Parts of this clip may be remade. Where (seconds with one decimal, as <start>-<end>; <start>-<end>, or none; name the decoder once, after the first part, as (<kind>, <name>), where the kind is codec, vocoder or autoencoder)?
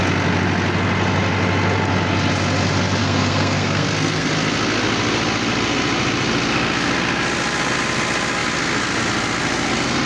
3.0-4.3 (codec, SNAC)